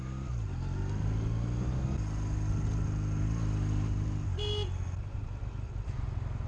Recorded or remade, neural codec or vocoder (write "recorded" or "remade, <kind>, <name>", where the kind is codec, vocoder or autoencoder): recorded